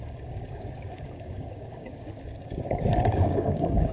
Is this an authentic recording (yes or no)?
no